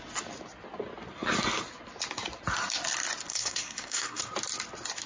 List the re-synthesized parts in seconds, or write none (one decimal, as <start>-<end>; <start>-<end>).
3.3-4.2